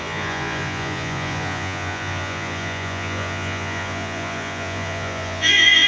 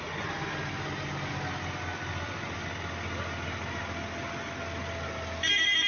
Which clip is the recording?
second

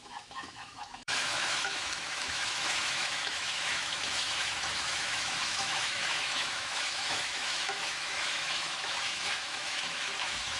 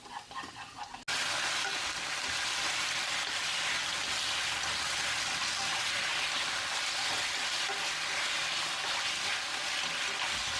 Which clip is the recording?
second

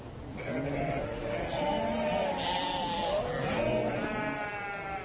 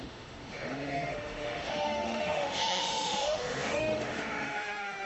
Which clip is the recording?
first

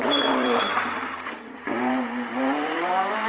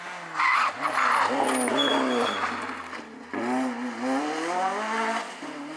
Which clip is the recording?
second